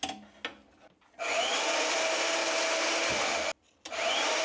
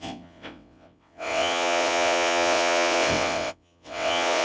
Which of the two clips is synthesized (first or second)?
second